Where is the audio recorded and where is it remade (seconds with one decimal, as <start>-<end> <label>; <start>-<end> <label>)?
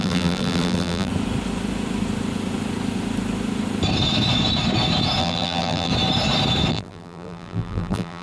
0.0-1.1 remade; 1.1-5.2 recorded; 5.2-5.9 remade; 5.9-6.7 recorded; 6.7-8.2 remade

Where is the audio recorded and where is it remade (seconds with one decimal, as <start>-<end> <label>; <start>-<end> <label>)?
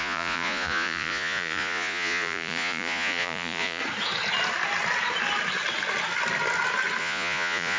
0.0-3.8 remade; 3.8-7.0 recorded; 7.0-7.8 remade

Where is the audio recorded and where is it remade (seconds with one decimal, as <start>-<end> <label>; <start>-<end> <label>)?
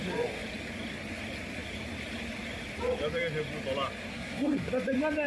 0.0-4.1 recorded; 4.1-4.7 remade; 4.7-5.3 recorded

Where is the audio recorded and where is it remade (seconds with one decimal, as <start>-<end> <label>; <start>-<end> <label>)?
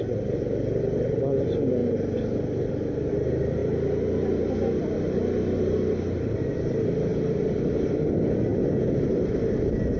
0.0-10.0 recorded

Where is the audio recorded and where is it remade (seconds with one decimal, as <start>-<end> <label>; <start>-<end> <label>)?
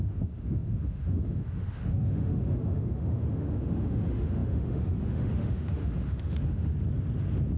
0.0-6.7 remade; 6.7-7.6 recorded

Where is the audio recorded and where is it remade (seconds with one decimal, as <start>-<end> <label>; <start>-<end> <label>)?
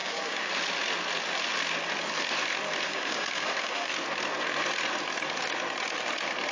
0.0-0.5 remade; 0.5-2.9 recorded; 2.9-3.9 remade; 3.9-6.5 recorded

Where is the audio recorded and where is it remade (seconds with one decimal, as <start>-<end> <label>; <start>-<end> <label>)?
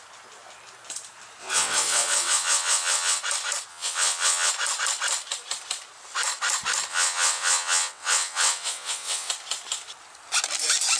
0.0-1.4 recorded; 1.4-3.2 remade; 3.2-3.7 recorded; 3.7-4.5 remade; 4.5-6.9 recorded; 6.9-9.3 remade; 9.3-11.0 recorded